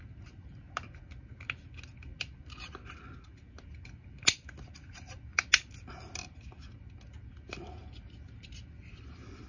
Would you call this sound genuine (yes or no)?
yes